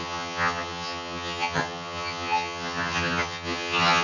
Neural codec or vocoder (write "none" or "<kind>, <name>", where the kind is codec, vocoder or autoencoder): vocoder, HiFi-GAN